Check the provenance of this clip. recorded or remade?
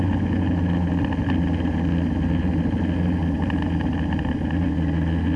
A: recorded